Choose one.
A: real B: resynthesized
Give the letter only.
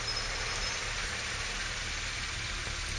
A